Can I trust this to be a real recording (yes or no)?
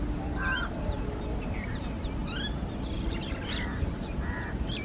yes